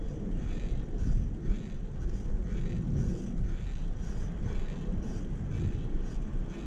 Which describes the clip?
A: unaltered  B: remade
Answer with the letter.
A